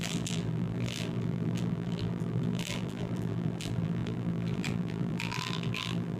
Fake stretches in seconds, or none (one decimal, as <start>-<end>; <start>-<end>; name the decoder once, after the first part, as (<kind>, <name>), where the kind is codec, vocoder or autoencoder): 0.0-6.2 (vocoder, BigVGAN v2)